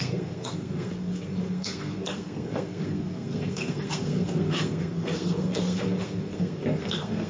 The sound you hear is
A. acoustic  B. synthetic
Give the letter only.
B